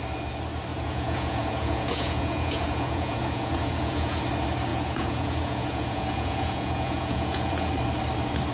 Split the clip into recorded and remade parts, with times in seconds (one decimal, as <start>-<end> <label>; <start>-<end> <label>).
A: 0.0-0.7 recorded; 0.7-4.2 remade; 4.2-4.7 recorded; 4.7-7.7 remade; 7.7-8.5 recorded